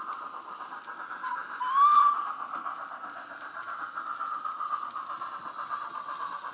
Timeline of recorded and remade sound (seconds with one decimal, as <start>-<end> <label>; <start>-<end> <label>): 0.0-6.5 recorded